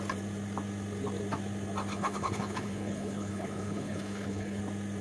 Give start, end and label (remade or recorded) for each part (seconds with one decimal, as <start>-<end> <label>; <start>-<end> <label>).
0.0-1.9 recorded; 1.9-4.6 remade; 4.6-5.0 recorded